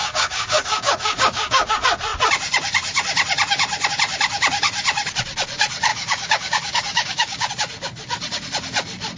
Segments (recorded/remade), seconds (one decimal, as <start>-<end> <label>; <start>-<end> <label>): 0.0-1.7 remade; 1.7-5.9 recorded; 5.9-7.5 remade; 7.5-9.2 recorded